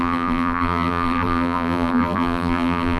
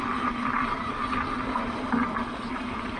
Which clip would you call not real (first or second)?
first